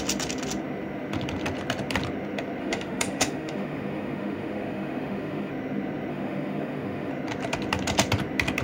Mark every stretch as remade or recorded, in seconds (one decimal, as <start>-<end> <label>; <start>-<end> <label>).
0.0-2.6 recorded; 2.6-5.5 remade; 5.5-6.1 recorded; 6.1-7.1 remade; 7.1-8.6 recorded